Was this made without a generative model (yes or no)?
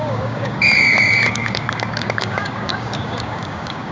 no